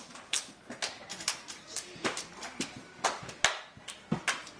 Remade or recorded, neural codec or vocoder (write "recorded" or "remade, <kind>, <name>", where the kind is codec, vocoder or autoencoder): recorded